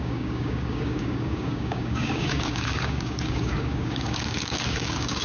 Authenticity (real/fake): fake